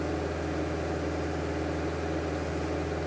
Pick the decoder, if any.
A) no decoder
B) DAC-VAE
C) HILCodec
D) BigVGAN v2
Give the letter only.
A